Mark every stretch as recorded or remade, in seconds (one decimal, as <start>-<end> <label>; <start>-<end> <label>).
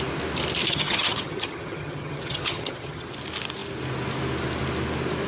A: 0.0-0.7 recorded; 0.7-3.1 remade; 3.1-5.3 recorded